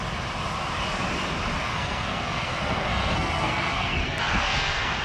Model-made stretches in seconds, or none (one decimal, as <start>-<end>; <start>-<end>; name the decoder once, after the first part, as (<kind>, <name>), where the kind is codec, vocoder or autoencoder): 1.7-5.0 (codec, SNAC)